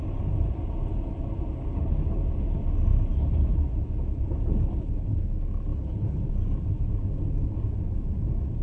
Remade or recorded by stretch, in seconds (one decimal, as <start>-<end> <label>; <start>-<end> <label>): 0.0-1.7 recorded; 1.7-2.2 remade; 2.2-5.7 recorded; 5.7-6.3 remade; 6.3-8.6 recorded